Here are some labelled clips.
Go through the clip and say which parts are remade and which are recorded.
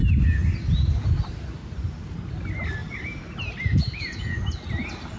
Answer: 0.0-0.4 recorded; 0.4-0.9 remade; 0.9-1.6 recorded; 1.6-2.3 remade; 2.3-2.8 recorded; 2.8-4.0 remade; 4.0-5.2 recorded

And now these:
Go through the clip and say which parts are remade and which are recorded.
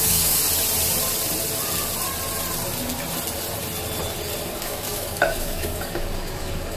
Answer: 0.0-0.4 remade; 0.4-4.5 recorded; 4.5-6.8 remade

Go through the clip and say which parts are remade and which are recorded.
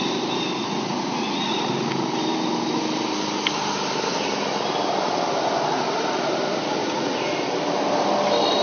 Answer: 0.0-0.6 recorded; 0.6-1.9 remade; 1.9-6.8 recorded; 6.8-7.3 remade; 7.3-8.6 recorded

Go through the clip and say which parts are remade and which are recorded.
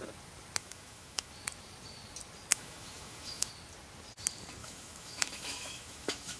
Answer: 0.0-0.6 recorded; 0.6-1.3 remade; 1.3-2.5 recorded; 2.5-3.5 remade; 3.5-4.6 recorded; 4.6-6.4 remade